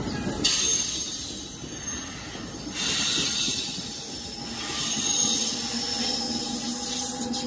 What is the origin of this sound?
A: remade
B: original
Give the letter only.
B